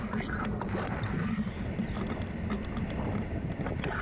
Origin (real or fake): real